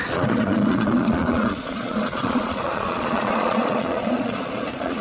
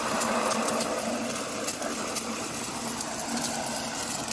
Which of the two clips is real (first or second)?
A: second